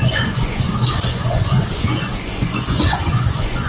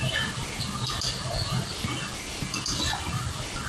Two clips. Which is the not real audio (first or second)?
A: first